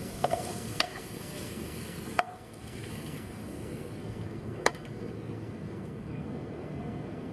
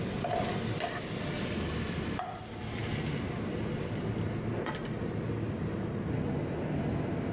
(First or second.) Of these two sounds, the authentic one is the second